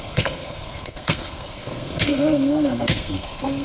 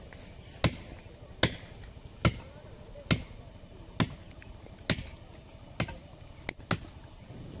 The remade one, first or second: first